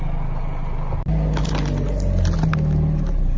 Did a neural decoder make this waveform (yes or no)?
no